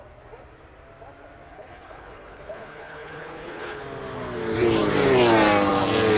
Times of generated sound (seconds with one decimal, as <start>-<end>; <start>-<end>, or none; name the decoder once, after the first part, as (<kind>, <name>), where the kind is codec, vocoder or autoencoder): 1.5-3.8 (codec, HILCodec)